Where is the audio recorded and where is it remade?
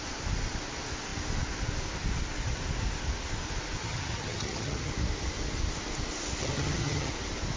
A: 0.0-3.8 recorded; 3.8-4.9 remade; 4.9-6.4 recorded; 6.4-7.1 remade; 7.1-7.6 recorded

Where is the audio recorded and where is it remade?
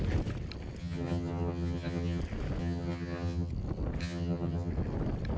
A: 0.0-0.8 recorded; 0.8-2.2 remade; 2.2-2.6 recorded; 2.6-3.5 remade; 3.5-4.0 recorded; 4.0-4.7 remade; 4.7-5.4 recorded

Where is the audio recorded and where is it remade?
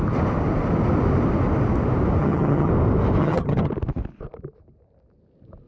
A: 0.0-2.2 recorded; 2.2-2.7 remade; 2.7-3.2 recorded; 3.2-3.7 remade; 3.7-5.7 recorded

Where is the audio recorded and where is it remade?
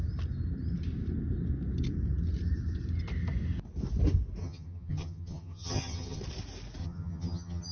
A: 0.0-4.4 recorded; 4.4-6.2 remade; 6.2-6.8 recorded; 6.8-7.7 remade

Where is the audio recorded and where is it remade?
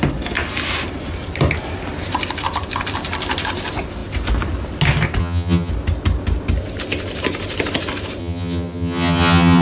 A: 0.0-5.2 recorded; 5.2-5.7 remade; 5.7-8.2 recorded; 8.2-9.6 remade